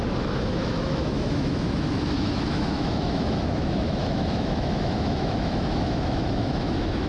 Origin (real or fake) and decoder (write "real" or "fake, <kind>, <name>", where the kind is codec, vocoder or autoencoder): fake, autoencoder, DAC-VAE